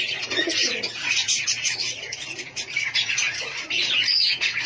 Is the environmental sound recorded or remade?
remade